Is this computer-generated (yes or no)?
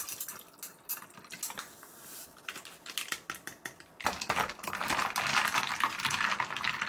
no